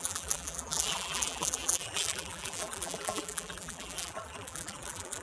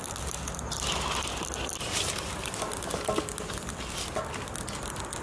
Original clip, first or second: second